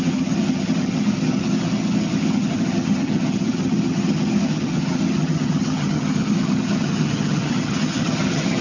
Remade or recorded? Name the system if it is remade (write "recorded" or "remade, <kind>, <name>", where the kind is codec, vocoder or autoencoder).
remade, vocoder, HiFi-GAN